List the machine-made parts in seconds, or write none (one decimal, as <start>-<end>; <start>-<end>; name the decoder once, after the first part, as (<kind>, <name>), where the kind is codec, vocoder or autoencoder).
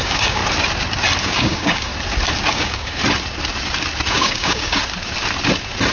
0.0-0.4 (codec, DAC); 1.2-1.9; 2.5-3.0; 4.1-4.8